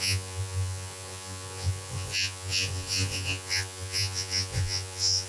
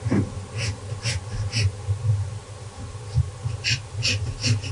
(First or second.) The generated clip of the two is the first